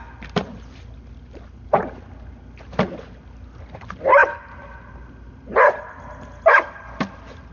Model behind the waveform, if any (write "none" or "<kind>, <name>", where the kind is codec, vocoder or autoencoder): none